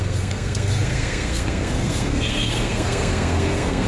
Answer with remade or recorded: remade